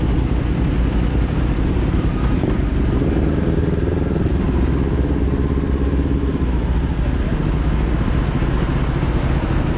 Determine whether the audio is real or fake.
real